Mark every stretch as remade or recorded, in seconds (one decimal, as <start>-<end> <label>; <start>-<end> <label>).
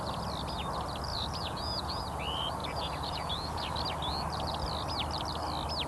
0.0-1.1 recorded; 1.1-2.0 remade; 2.0-2.6 recorded; 2.6-3.6 remade; 3.6-5.9 recorded